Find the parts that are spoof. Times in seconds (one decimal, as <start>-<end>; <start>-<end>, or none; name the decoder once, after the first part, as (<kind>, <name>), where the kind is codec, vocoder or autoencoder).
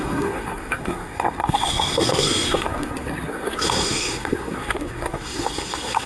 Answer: 0.0-6.1 (codec, SNAC)